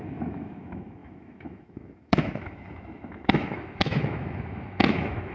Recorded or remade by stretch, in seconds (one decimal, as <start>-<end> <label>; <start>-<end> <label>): 0.0-5.3 remade